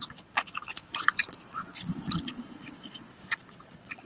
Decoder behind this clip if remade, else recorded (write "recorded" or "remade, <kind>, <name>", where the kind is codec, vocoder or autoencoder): remade, vocoder, Vocos